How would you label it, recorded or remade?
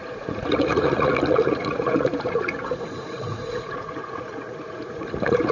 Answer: remade